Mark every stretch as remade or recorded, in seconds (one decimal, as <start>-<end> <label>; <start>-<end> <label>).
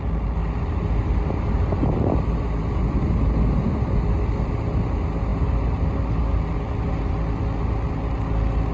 0.0-8.7 recorded